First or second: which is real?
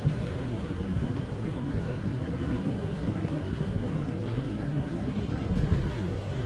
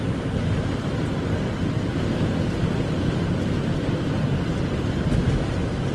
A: second